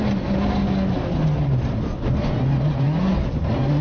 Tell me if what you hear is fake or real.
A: real